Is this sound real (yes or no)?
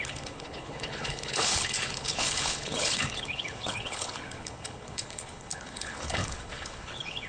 no